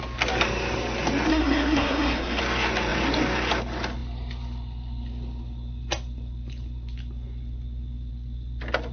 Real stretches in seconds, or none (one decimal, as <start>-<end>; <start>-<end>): 0.0-1.3; 2.4-8.9